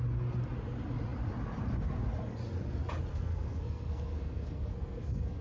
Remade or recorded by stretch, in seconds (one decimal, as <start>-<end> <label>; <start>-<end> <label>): 0.0-3.1 recorded; 3.1-5.4 remade